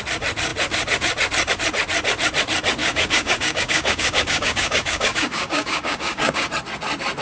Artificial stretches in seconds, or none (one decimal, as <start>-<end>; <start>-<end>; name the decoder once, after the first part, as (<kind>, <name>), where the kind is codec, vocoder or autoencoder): 2.8-6.5 (codec, DAC)